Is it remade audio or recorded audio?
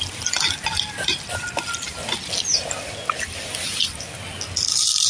recorded